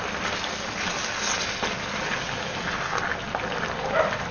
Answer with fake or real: real